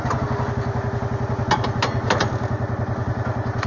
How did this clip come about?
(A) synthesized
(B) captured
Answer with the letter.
B